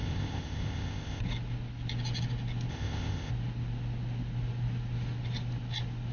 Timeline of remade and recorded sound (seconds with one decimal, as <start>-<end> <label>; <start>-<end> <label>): 0.0-1.2 remade; 1.2-2.7 recorded; 2.7-3.3 remade; 3.3-6.1 recorded